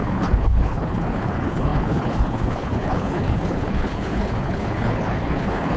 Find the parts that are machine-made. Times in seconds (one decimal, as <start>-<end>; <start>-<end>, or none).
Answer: 0.0-5.8